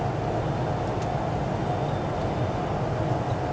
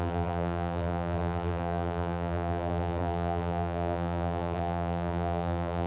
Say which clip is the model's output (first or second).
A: second